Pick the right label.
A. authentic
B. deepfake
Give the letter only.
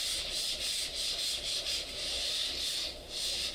A